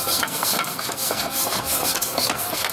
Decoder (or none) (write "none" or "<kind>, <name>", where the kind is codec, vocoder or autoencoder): codec, SNAC